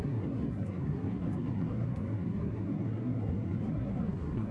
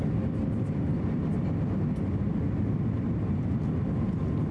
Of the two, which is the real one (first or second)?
second